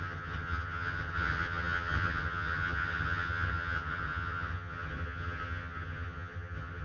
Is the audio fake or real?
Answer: fake